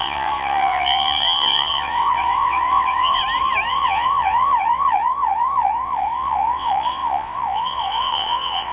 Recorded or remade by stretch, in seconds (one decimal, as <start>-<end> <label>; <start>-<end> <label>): 0.0-3.2 remade; 3.2-3.7 recorded; 3.7-8.7 remade